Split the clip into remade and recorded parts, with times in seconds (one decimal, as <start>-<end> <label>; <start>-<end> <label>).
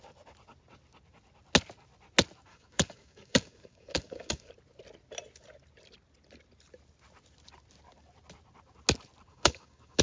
0.0-2.5 recorded; 2.5-4.5 remade; 4.5-9.3 recorded; 9.3-10.0 remade